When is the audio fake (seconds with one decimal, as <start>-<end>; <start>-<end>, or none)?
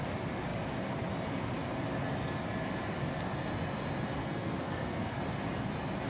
4.2-5.2